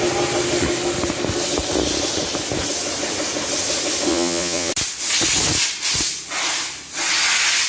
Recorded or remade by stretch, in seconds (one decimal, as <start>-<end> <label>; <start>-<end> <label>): 0.0-4.1 recorded; 4.1-4.7 remade; 4.7-7.7 recorded